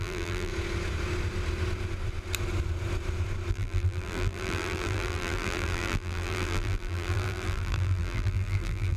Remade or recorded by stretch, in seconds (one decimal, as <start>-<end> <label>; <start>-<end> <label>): 0.0-0.5 remade; 0.5-3.5 recorded; 3.5-9.0 remade